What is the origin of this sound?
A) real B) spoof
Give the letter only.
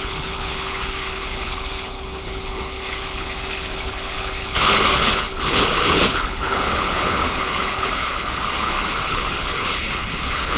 B